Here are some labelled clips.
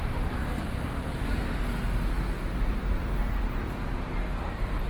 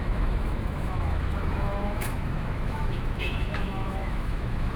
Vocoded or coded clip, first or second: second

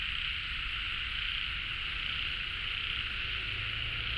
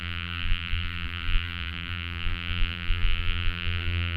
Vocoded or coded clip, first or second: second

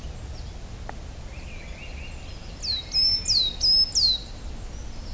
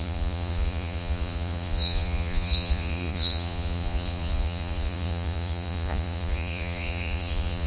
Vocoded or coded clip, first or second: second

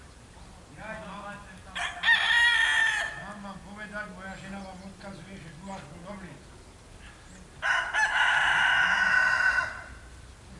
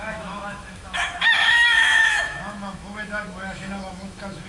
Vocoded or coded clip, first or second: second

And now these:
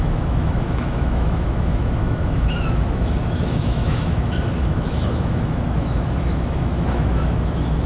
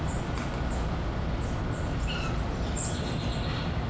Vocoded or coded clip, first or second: first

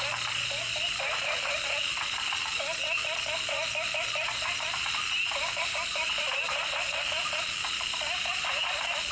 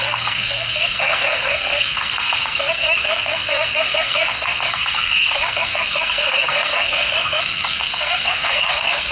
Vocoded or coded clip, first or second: second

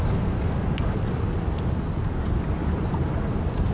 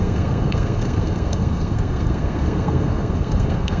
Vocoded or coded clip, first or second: second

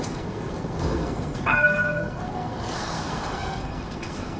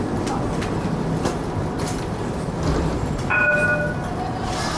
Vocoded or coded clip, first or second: first